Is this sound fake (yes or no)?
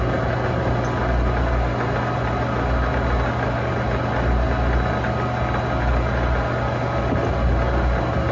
no